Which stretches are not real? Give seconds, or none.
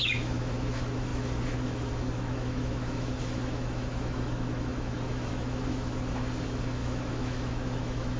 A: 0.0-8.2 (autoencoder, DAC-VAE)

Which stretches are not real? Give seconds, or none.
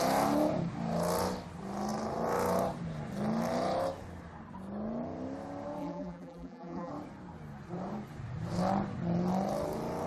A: 5.8-6.9 (vocoder, BigVGAN v2)